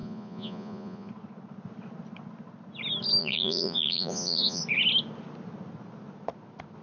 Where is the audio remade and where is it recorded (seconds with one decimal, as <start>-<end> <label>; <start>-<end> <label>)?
0.0-1.1 remade; 1.1-3.2 recorded; 3.2-4.6 remade; 4.6-6.8 recorded